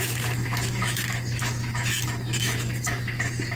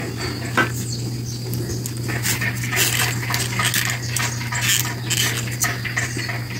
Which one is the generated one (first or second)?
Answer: first